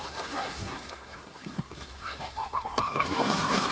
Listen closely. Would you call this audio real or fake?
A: fake